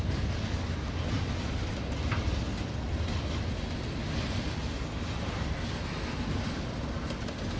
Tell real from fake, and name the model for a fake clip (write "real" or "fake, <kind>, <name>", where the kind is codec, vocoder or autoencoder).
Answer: real